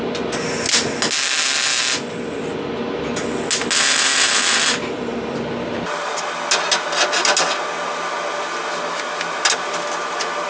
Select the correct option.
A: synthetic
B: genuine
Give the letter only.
B